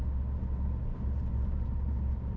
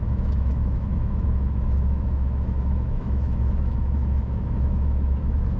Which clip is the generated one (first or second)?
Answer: second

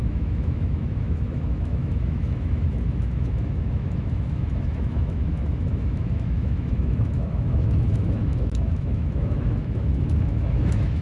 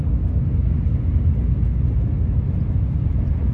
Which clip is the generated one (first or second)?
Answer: first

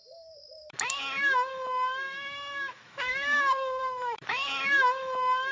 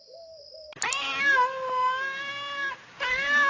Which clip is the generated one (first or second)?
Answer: first